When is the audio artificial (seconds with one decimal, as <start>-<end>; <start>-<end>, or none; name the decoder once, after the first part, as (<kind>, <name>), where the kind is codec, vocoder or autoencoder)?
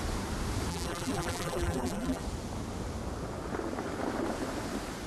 0.7-2.2 (vocoder, BigVGAN v2)